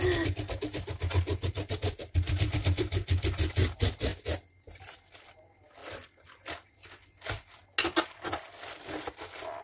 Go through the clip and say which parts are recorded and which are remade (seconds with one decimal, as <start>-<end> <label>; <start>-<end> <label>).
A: 0.0-9.6 recorded